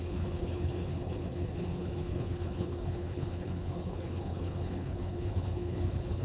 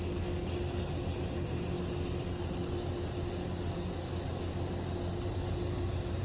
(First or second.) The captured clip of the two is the second